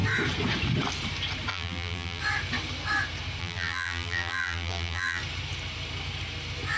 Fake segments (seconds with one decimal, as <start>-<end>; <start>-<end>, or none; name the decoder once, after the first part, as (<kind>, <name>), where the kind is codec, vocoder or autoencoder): 1.5-2.2 (vocoder, BigVGAN v2); 3.4-5.2